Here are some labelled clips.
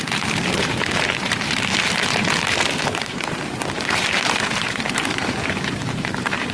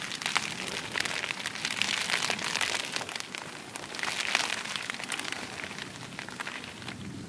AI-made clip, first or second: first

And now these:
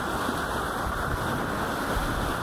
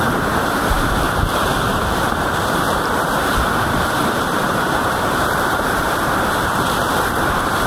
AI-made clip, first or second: second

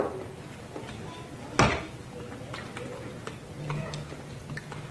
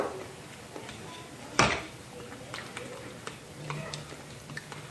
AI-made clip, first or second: second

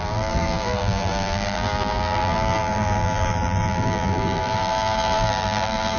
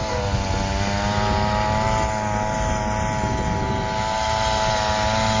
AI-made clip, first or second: first